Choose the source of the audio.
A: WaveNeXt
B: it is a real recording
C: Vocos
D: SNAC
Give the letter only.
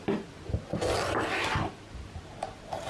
B